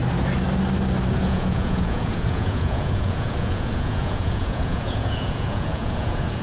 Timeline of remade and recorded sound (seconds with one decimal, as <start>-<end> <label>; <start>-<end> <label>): 0.0-1.1 recorded; 1.1-6.4 remade